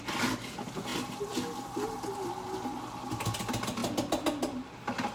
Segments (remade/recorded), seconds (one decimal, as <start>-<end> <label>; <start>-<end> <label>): 0.0-5.1 recorded